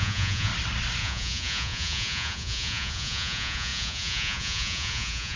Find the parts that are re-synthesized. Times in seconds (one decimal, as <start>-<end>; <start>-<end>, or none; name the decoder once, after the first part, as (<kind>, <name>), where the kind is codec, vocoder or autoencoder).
0.0-0.5 (vocoder, Vocos); 1.0-5.4